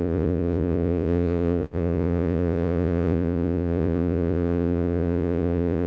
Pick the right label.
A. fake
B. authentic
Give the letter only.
A